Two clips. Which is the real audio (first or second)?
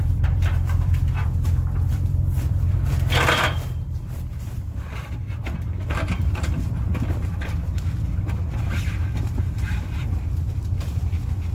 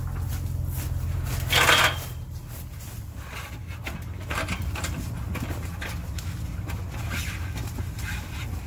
second